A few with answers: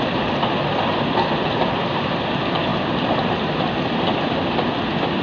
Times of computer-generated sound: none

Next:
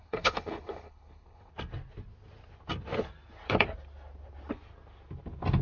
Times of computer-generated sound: 0.0-1.5 (codec, HILCodec)

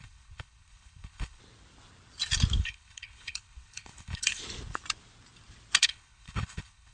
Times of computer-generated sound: 0.0-1.4 (codec, HILCodec); 2.6-4.4; 5.8-6.9

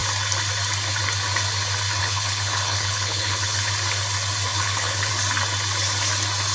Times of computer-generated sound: 2.0-3.7 (codec, HILCodec); 4.5-5.1

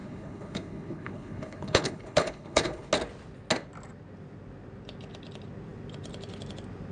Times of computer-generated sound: 0.0-2.9 (codec, HILCodec)

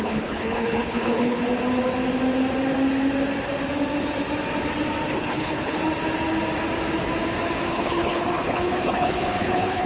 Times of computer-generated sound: 0.0-1.4 (codec, HILCodec); 5.1-5.8; 7.7-9.9